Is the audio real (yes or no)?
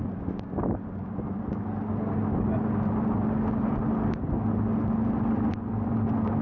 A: yes